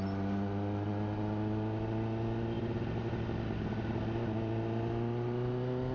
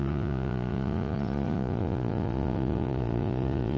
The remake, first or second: second